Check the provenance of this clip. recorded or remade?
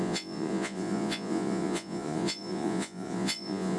remade